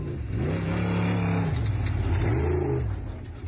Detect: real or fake real